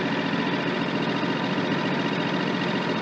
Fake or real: real